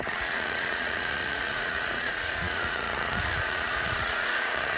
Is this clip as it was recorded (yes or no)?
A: no